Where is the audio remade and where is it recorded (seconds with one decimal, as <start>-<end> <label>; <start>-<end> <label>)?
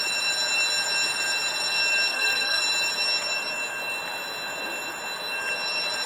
0.0-2.1 recorded; 2.1-2.6 remade; 2.6-6.1 recorded